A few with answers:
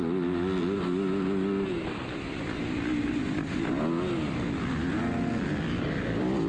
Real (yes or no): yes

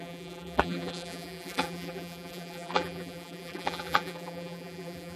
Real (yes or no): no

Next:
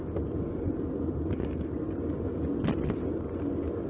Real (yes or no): yes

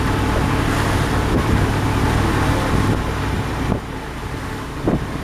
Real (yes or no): yes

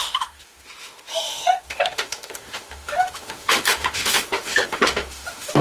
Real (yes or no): no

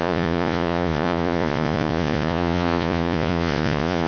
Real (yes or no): no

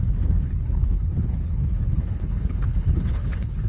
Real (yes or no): no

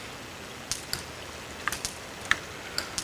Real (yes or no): yes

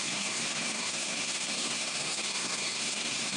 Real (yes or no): no